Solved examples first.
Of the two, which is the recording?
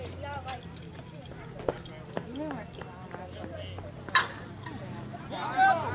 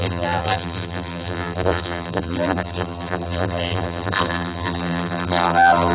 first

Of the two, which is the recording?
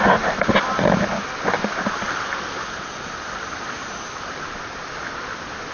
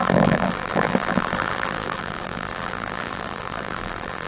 first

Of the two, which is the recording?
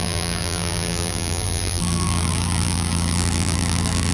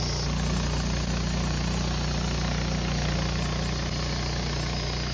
second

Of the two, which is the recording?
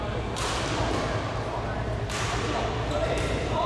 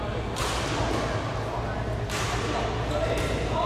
second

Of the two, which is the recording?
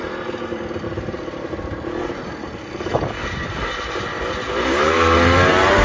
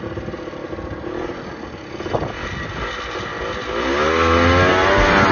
second